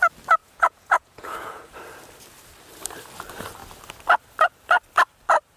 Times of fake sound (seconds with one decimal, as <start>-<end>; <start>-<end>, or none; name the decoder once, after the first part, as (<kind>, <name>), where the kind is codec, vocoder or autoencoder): 0.4-1.7 (vocoder, Vocos)